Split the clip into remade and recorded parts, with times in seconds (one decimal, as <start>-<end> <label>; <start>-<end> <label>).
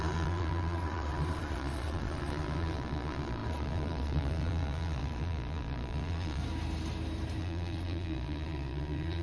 0.0-6.4 remade; 6.4-7.4 recorded; 7.4-9.2 remade